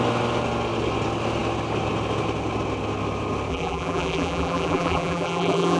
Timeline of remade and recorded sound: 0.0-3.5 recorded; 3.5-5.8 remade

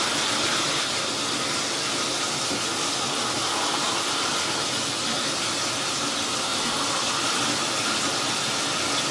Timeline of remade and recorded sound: 0.0-3.7 recorded; 3.7-4.3 remade; 4.3-9.1 recorded